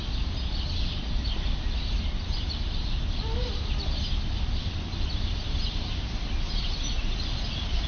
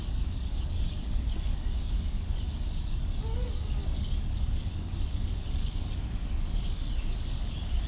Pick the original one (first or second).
first